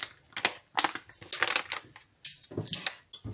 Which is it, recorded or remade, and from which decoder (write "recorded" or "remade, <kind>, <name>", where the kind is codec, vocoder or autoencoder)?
recorded